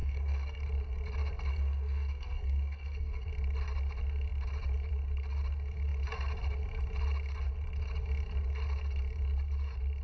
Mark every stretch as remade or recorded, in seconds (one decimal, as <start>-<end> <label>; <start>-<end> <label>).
0.0-0.6 remade; 0.6-1.5 recorded; 1.5-3.3 remade; 3.3-10.0 recorded